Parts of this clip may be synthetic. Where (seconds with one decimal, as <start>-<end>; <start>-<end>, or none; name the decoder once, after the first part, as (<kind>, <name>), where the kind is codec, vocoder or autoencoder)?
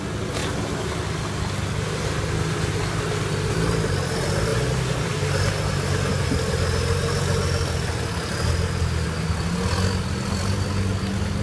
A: none